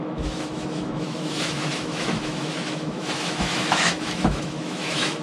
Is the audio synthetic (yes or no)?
yes